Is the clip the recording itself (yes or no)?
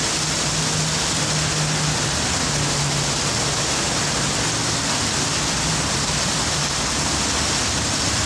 yes